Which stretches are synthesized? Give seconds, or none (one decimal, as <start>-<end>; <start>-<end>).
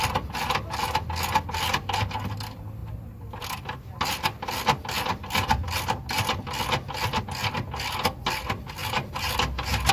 8.8-9.9